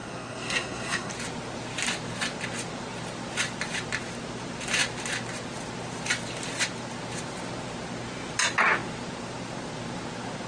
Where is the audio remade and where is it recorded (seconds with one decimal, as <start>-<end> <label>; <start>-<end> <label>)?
0.0-1.1 remade; 1.1-10.5 recorded

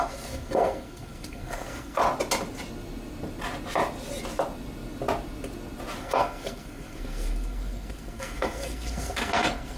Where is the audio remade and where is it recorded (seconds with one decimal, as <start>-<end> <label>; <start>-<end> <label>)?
0.0-2.0 remade; 2.0-6.0 recorded; 6.0-9.8 remade

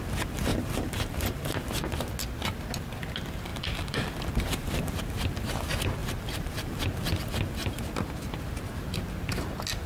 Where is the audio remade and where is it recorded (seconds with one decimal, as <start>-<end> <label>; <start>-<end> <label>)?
0.0-0.5 recorded; 0.5-1.5 remade; 1.5-3.5 recorded; 3.5-5.0 remade; 5.0-6.0 recorded; 6.0-6.8 remade; 6.8-9.9 recorded

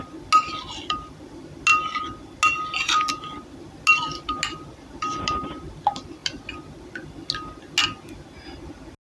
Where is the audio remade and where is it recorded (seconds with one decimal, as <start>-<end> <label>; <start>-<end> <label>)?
0.0-9.1 recorded

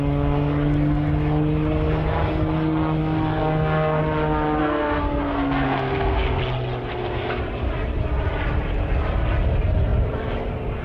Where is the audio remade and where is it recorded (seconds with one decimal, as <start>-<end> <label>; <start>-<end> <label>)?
0.0-3.0 recorded; 3.0-4.0 remade; 4.0-4.6 recorded; 4.6-6.4 remade; 6.4-6.9 recorded; 6.9-7.4 remade; 7.4-10.8 recorded